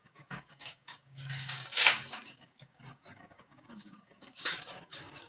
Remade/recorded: remade